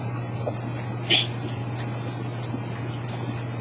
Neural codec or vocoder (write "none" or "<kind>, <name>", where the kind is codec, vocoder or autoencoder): none